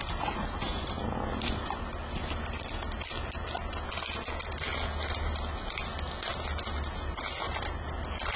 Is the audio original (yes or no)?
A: yes